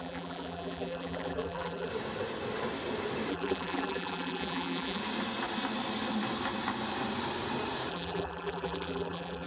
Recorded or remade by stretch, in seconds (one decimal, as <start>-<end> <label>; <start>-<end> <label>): 0.0-1.9 remade; 1.9-3.3 recorded; 3.3-5.0 remade; 5.0-7.9 recorded; 7.9-9.5 remade